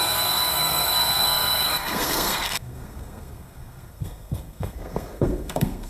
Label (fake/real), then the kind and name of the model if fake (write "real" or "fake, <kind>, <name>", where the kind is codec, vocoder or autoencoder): fake, codec, SNAC